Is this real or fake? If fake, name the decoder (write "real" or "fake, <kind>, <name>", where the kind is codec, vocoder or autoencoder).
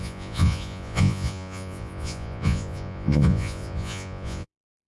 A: fake, vocoder, Vocos